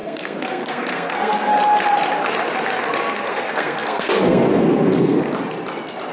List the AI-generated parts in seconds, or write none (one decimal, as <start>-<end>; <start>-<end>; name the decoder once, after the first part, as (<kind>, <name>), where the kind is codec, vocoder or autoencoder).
0.0-1.5 (codec, SNAC); 3.3-5.2